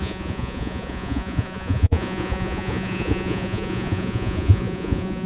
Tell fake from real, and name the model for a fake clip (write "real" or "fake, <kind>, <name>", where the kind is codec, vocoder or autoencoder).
fake, vocoder, Vocos